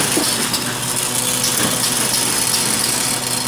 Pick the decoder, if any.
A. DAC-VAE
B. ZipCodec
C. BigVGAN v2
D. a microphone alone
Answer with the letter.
D